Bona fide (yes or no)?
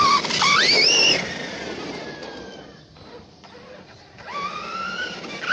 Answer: yes